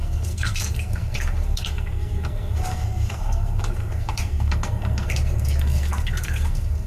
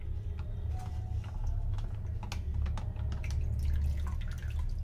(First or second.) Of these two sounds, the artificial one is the first